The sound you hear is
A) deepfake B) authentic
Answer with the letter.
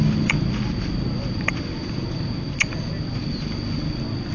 B